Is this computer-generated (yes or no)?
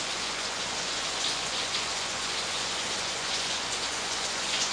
yes